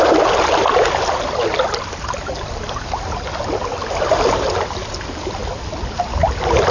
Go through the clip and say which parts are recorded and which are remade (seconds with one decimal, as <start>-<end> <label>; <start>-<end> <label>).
0.0-6.7 recorded